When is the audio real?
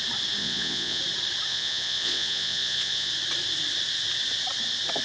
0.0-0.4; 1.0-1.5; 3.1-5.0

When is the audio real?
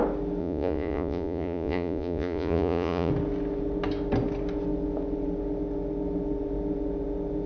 0.0-0.4; 3.1-7.5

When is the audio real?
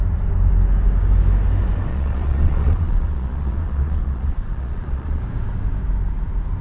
0.0-1.9; 5.2-6.6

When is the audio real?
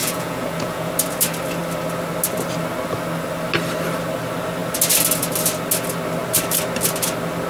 0.9-7.5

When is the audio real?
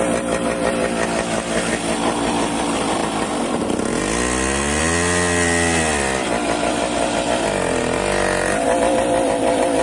0.0-9.8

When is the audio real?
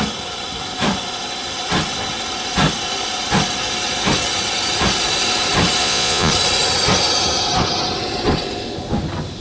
0.0-5.8; 6.3-9.4